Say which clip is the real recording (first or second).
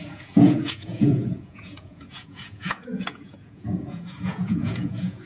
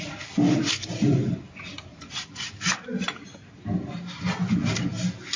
second